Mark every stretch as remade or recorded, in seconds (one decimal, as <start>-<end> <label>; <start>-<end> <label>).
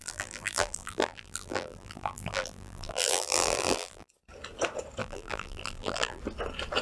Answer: 0.0-4.1 remade; 4.1-5.0 recorded; 5.0-6.2 remade; 6.2-6.8 recorded